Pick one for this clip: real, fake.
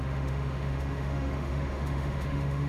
fake